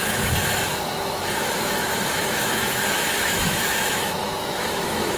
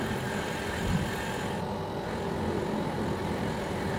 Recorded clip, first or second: second